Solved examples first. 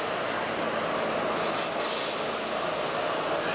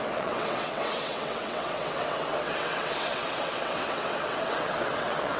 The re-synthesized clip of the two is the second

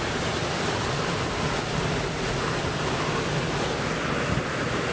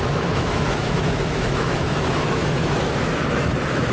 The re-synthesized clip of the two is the second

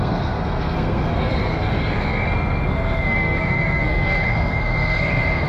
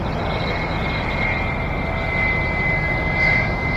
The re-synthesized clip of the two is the first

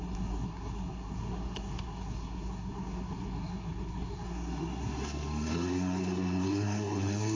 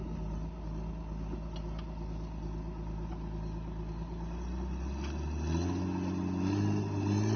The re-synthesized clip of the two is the first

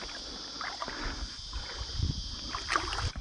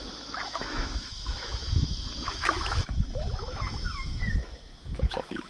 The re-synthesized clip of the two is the second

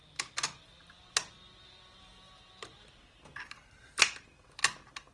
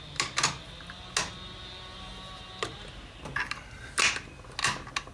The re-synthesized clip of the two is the first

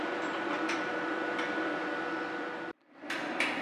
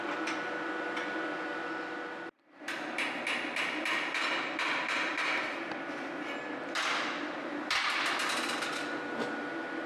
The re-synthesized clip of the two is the first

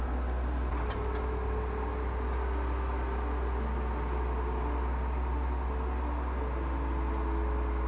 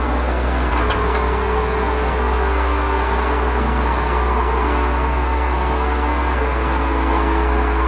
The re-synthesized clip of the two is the second